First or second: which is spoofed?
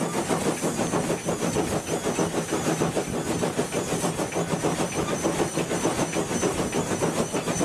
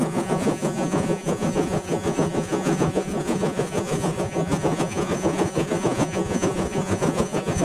second